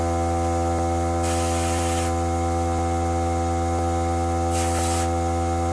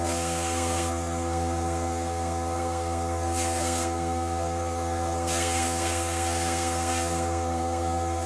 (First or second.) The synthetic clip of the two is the second